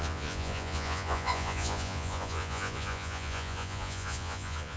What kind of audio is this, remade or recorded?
remade